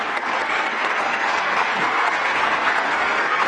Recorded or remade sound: remade